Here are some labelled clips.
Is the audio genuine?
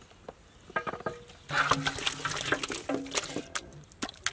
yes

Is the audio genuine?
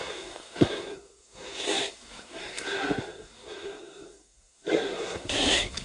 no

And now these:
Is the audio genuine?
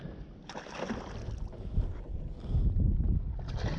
yes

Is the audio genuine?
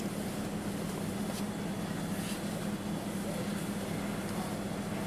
yes